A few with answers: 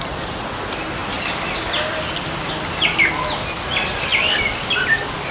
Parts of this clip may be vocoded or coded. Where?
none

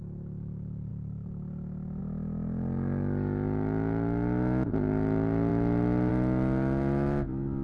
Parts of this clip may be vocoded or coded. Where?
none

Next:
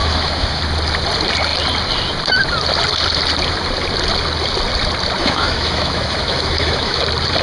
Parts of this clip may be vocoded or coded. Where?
0.0-0.6 (autoencoder, DAC-VAE); 5.2-7.0

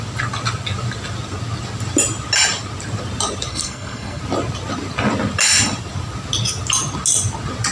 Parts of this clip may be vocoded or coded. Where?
3.5-4.2 (codec, SNAC)

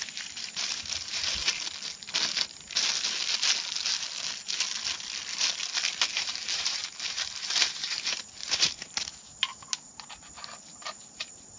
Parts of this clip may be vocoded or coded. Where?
0.0-1.4 (vocoder, BigVGAN v2); 6.1-11.6

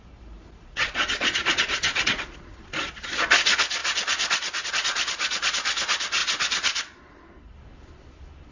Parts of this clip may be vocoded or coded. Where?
0.6-3.2 (vocoder, Vocos)

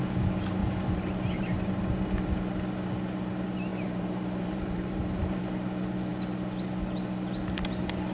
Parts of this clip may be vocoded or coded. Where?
0.6-1.8 (vocoder, BigVGAN v2); 3.7-5.4

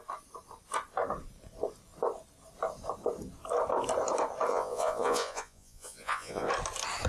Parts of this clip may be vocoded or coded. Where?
4.5-6.5 (vocoder, Vocos)